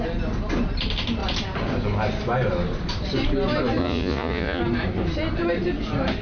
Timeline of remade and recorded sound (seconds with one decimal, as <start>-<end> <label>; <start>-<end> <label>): 0.0-3.8 recorded; 3.8-4.6 remade; 4.6-6.2 recorded